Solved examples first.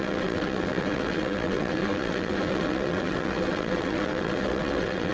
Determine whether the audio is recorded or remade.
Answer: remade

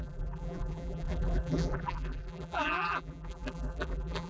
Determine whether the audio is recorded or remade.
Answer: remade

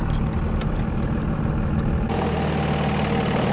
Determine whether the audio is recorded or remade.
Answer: recorded